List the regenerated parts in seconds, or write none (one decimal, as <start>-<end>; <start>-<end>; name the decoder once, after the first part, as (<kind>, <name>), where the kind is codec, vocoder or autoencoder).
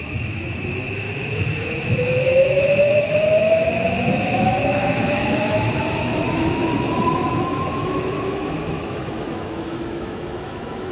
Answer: 0.0-10.9 (autoencoder, DAC-VAE)